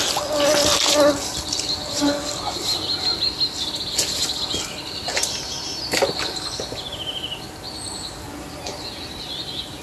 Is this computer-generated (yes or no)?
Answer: no